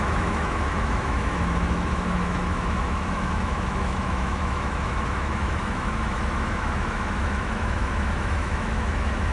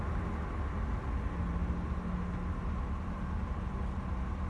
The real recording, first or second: second